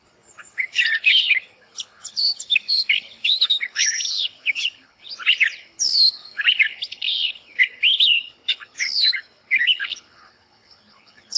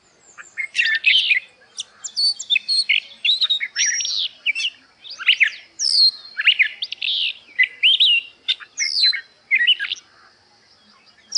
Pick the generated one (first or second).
first